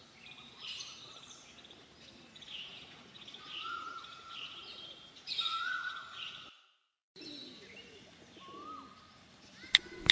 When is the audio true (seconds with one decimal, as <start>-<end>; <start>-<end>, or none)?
0.0-2.3; 6.5-10.1